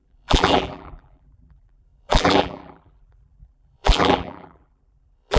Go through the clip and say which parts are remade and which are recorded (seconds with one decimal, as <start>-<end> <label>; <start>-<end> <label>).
0.0-5.4 remade